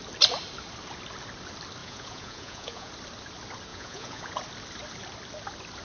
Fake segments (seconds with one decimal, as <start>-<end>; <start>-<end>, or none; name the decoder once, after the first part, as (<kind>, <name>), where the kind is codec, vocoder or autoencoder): 1.8-2.9 (vocoder, Vocos); 3.7-4.3